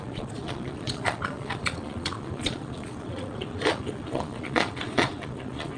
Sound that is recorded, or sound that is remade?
remade